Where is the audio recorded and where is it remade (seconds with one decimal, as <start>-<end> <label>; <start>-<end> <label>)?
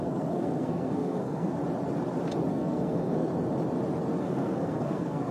0.0-1.6 remade; 1.6-2.5 recorded; 2.5-3.3 remade; 3.3-4.2 recorded; 4.2-5.3 remade